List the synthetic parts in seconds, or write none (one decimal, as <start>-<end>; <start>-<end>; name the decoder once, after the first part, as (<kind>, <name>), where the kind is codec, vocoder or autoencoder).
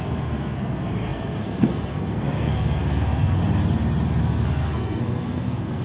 0.0-3.4 (codec, SNAC); 4.2-5.8